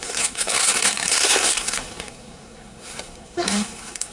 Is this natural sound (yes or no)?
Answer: no